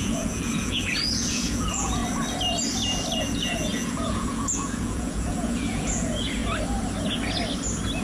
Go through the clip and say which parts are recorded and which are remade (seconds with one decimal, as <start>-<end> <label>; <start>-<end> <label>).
0.0-2.0 remade; 2.0-3.2 recorded; 3.2-6.4 remade; 6.4-8.0 recorded